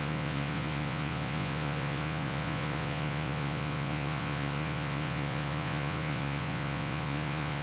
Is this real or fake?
fake